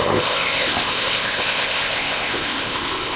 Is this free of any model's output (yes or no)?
no